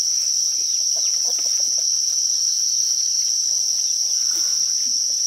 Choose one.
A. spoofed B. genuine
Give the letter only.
B